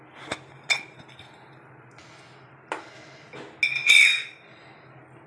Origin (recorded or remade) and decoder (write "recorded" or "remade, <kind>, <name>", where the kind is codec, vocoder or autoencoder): recorded